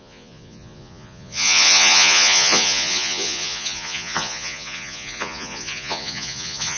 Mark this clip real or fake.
fake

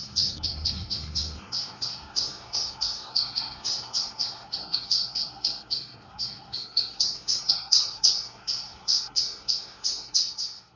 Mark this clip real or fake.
fake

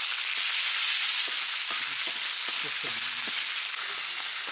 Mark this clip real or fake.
real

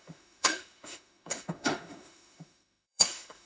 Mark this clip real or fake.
fake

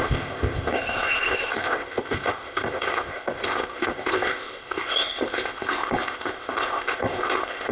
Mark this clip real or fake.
fake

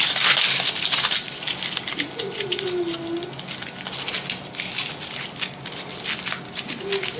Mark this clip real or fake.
real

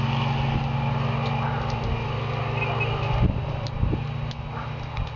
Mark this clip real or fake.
real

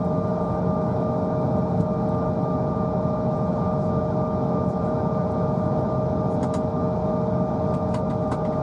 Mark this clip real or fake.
real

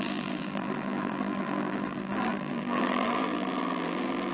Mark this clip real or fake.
fake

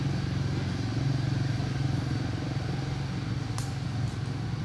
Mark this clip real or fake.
real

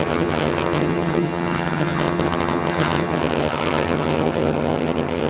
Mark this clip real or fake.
fake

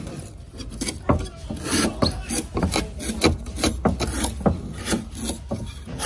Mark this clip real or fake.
real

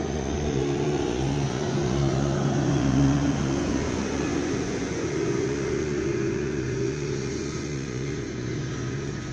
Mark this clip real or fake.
fake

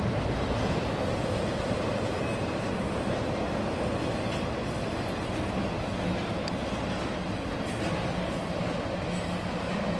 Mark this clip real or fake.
real